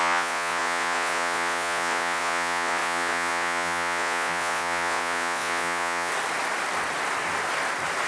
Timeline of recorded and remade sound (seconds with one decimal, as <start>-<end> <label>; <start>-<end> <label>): 0.0-6.1 remade; 6.1-8.1 recorded